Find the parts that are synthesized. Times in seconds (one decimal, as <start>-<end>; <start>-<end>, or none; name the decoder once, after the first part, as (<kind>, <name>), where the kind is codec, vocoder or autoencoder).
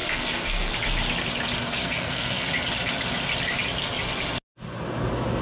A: 0.0-0.7 (codec, SNAC); 1.8-2.5